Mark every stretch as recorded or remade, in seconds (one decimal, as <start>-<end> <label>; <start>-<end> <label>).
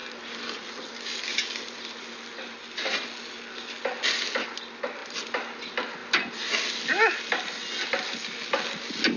0.0-1.3 recorded; 1.3-2.1 remade; 2.1-9.2 recorded